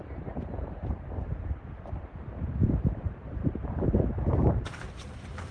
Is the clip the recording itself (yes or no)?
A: no